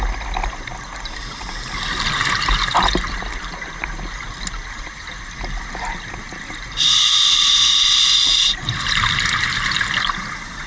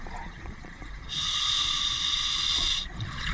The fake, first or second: second